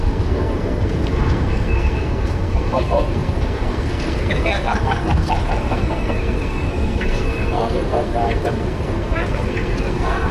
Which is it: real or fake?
fake